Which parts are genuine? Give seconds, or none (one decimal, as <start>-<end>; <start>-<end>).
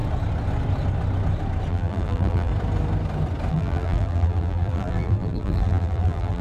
0.0-1.7; 2.5-3.5